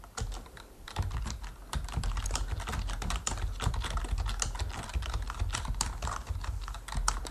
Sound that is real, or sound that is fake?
real